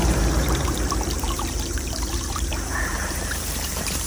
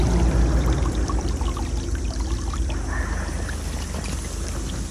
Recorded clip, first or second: second